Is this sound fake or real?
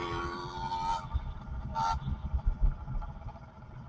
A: real